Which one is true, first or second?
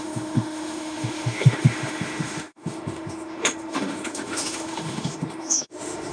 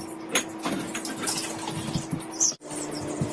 second